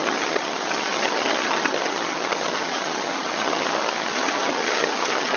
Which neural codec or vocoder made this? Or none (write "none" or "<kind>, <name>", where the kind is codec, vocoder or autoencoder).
vocoder, HiFi-GAN